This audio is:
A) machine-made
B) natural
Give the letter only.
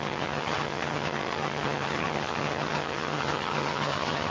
A